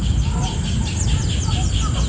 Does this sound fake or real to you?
real